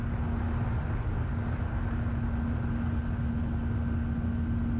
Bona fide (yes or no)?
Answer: yes